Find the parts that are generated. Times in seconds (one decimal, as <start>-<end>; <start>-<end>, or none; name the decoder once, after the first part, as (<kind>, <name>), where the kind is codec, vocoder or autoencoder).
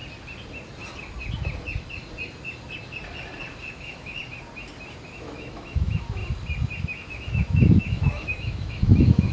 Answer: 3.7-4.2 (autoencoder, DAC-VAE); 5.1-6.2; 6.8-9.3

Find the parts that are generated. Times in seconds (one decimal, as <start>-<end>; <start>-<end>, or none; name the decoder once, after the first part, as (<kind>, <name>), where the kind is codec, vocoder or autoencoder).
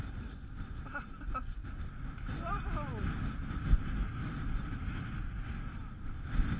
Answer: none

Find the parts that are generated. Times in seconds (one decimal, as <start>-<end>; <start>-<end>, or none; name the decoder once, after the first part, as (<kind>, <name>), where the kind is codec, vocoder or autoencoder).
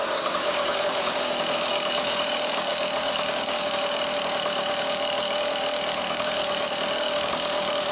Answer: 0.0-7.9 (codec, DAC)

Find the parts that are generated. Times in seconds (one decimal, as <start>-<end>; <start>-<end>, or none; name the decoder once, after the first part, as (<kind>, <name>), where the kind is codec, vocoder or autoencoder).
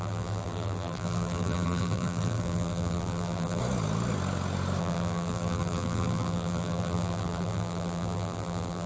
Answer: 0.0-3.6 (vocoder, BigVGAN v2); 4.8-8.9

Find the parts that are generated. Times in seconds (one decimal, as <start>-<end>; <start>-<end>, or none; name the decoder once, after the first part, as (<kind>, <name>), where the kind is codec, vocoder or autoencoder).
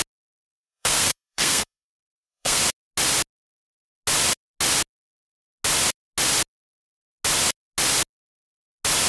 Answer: 0.5-2.6 (codec, SNAC)